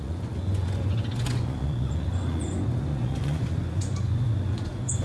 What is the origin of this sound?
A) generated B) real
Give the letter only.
A